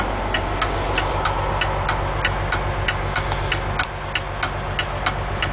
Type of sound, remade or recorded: recorded